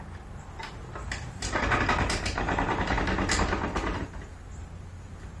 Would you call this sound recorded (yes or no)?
yes